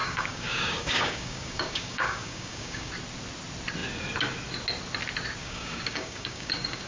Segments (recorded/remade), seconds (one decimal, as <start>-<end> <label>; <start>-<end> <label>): 0.0-2.9 remade; 2.9-5.4 recorded; 5.4-6.9 remade